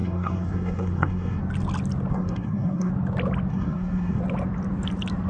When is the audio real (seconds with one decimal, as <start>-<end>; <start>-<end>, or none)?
1.4-2.1; 2.9-3.5; 4.2-5.3